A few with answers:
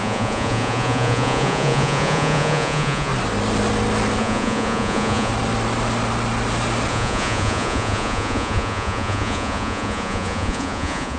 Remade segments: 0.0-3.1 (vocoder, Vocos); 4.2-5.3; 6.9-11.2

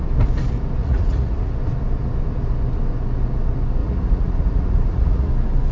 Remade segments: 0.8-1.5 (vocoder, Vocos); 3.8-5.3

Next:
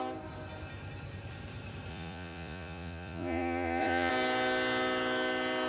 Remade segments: 1.9-4.1 (vocoder, Vocos)

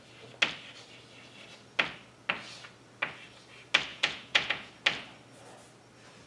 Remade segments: 3.9-4.7 (vocoder, Vocos)

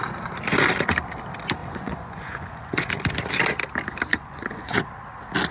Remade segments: 1.6-2.9 (vocoder, Vocos); 4.1-4.8

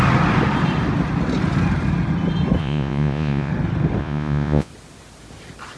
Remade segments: 2.6-3.5 (vocoder, Vocos); 4.0-4.7

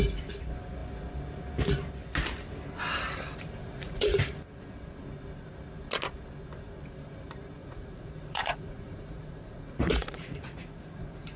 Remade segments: 3.6-4.2 (vocoder, Vocos); 7.6-11.4

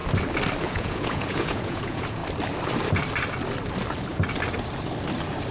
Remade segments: 0.7-2.2 (vocoder, Vocos)